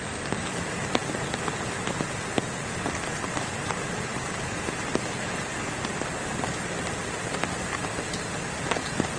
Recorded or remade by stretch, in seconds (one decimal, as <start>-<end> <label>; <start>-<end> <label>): 0.0-4.1 recorded; 4.1-6.9 remade; 6.9-9.2 recorded